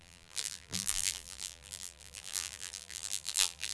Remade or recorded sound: remade